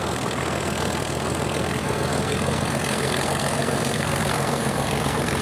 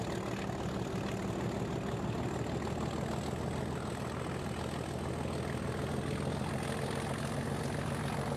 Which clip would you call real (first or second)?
second